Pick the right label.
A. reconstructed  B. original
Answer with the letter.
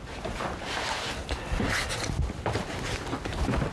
B